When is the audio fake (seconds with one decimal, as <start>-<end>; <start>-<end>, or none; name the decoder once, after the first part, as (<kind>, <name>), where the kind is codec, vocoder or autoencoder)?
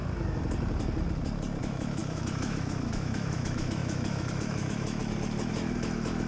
1.6-5.0 (autoencoder, DAC-VAE); 5.5-6.3